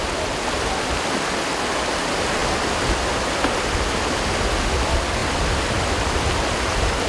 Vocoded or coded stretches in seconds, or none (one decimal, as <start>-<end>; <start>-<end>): none